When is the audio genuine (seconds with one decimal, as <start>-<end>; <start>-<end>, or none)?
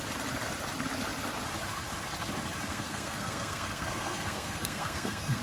0.0-2.7